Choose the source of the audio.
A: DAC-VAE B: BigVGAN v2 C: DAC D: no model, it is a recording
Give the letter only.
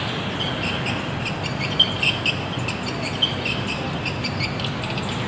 D